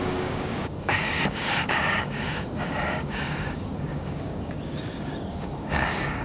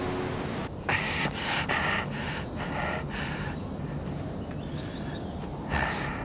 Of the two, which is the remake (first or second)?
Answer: first